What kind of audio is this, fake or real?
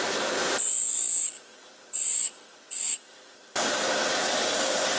real